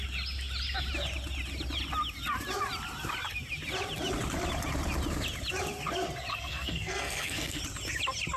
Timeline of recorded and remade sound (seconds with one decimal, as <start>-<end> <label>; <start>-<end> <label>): 0.0-6.3 recorded; 6.3-7.6 remade; 7.6-8.4 recorded